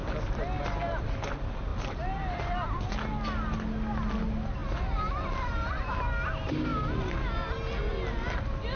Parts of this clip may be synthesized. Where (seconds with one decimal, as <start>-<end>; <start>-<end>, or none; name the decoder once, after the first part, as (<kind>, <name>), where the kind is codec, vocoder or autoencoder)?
1.7-2.8 (vocoder, BigVGAN v2); 4.6-6.3